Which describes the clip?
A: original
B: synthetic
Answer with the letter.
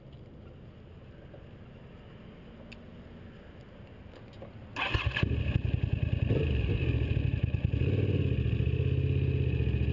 A